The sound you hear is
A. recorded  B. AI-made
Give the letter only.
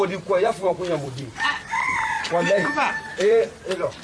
B